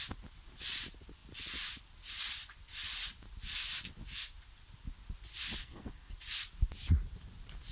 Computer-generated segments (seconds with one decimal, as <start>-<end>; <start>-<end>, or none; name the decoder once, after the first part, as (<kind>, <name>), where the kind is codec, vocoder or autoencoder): 5.6-6.1 (codec, SNAC)